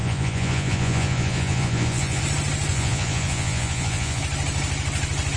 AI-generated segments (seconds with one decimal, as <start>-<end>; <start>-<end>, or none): 0.0-2.2; 2.7-4.2